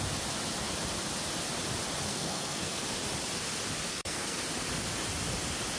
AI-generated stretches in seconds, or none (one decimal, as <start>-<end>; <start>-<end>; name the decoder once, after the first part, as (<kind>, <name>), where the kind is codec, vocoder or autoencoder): 2.1-2.8 (codec, SNAC); 3.9-4.4